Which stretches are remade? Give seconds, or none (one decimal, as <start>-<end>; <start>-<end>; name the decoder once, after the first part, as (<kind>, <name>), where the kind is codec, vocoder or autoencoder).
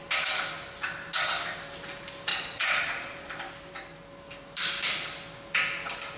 2.3-3.3 (vocoder, Vocos)